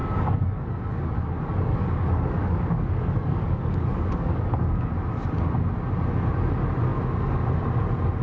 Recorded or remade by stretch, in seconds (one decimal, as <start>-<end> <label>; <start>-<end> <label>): 0.0-4.9 remade; 4.9-8.2 recorded